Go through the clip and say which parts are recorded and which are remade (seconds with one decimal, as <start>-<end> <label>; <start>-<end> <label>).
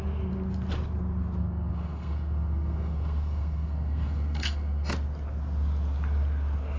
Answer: 0.0-1.4 recorded; 1.4-4.9 remade; 4.9-6.8 recorded